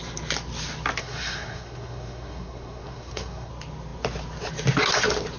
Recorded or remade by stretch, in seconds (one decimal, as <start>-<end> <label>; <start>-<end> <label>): 0.0-1.0 recorded; 1.0-3.5 remade; 3.5-5.4 recorded